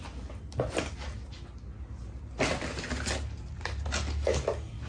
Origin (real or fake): real